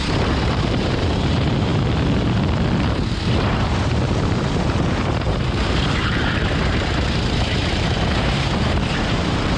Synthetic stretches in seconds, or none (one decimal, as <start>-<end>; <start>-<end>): 0.0-1.7; 3.3-9.6